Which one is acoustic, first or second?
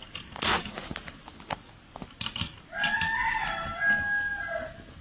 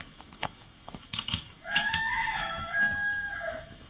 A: first